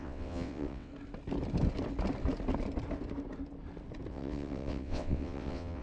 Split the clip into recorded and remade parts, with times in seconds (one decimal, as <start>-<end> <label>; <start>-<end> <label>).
0.0-0.9 remade; 0.9-4.1 recorded; 4.1-5.8 remade